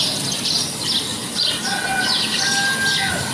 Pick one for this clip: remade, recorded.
recorded